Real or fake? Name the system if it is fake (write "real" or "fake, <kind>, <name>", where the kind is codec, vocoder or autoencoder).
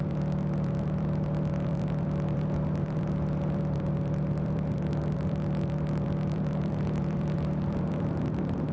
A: fake, vocoder, BigVGAN v2